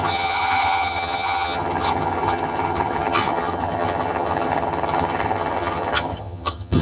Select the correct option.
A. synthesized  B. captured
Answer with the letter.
A